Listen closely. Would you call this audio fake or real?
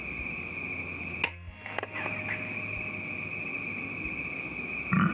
real